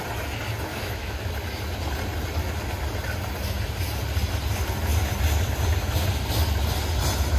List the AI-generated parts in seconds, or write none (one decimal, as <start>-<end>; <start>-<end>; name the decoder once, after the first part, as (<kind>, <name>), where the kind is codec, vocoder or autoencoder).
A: 0.7-1.2 (autoencoder, DAC-VAE)